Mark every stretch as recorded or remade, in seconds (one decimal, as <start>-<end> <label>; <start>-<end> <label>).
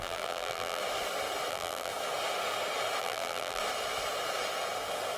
0.0-0.8 remade; 0.8-1.5 recorded; 1.5-1.9 remade; 1.9-3.0 recorded; 3.0-3.6 remade; 3.6-5.2 recorded